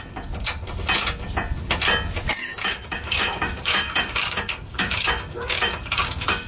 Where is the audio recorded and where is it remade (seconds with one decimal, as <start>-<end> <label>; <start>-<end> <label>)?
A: 0.0-2.4 recorded; 2.4-6.5 remade